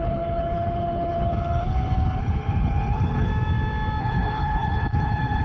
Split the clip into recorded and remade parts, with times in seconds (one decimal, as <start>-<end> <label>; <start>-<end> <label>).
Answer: 0.0-3.3 remade; 3.3-4.0 recorded; 4.0-5.4 remade

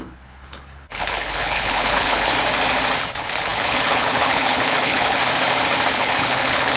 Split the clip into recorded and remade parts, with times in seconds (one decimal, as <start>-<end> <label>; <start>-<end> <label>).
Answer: 0.0-2.3 remade; 2.3-3.1 recorded; 3.1-5.2 remade; 5.2-5.9 recorded; 5.9-6.8 remade